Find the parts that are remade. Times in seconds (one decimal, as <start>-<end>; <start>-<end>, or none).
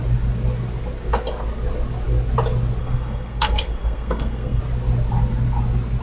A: 2.8-4.6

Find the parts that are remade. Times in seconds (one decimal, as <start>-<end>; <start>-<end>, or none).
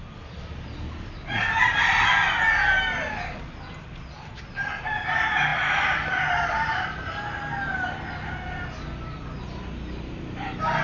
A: 5.5-7.0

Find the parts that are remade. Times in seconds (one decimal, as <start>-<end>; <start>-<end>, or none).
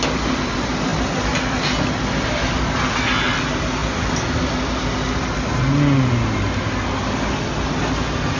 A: none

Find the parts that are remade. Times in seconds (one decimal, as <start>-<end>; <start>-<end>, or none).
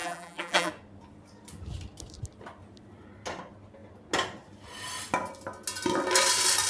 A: 0.0-0.7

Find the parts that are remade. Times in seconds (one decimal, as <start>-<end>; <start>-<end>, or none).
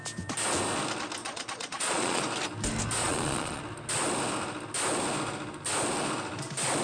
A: 1.2-2.2; 3.0-3.6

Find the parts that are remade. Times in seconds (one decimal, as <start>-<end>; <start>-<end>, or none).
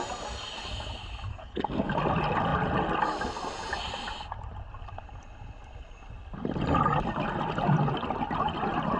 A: 1.3-1.9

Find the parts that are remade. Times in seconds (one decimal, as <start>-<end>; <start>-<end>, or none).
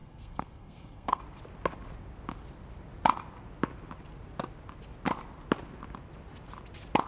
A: 0.0-1.2